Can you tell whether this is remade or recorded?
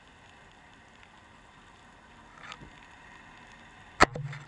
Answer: recorded